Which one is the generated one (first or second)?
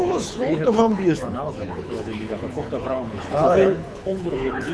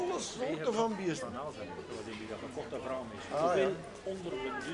first